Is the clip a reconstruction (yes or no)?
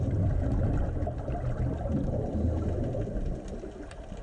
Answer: no